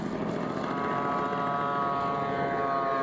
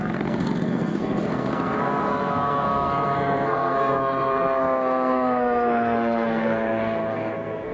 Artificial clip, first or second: second